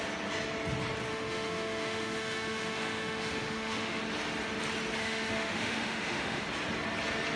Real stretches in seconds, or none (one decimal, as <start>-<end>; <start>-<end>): 0.0-1.1; 4.0-5.0; 6.4-7.4